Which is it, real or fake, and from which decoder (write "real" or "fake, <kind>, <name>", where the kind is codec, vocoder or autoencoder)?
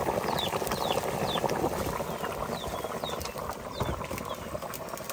real